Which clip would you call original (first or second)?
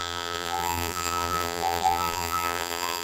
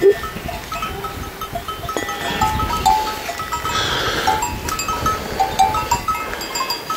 second